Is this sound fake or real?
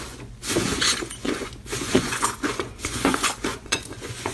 fake